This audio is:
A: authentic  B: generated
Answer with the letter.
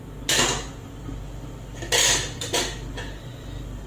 A